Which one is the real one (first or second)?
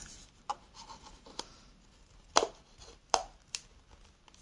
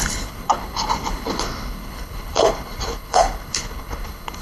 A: first